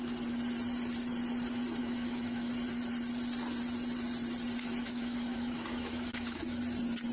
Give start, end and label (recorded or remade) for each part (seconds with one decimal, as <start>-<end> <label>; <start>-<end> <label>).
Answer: 0.0-1.8 recorded; 1.8-2.5 remade; 2.5-4.8 recorded; 4.8-6.6 remade; 6.6-7.1 recorded